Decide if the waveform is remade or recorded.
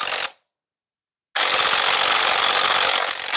recorded